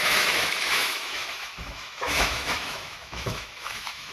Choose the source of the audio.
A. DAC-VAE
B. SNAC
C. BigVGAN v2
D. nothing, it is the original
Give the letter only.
A